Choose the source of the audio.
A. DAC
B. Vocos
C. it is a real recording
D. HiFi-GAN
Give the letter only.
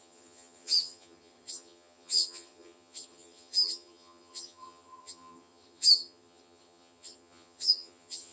D